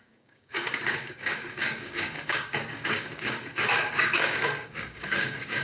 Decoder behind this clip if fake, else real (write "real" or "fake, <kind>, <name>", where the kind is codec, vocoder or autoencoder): fake, codec, DAC